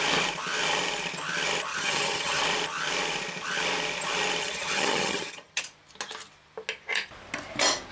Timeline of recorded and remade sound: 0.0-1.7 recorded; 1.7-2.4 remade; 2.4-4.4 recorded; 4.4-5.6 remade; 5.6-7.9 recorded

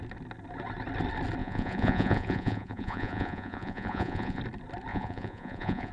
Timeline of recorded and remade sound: 0.0-1.4 recorded; 1.4-4.4 remade; 4.4-4.9 recorded; 4.9-5.9 remade